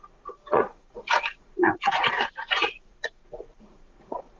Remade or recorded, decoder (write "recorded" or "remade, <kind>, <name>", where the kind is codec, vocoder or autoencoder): remade, vocoder, Vocos